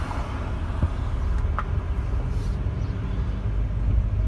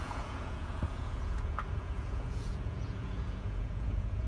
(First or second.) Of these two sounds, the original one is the first